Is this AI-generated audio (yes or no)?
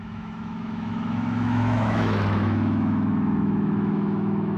yes